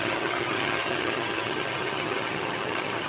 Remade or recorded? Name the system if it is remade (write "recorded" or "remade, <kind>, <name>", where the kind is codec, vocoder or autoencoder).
remade, vocoder, HiFi-GAN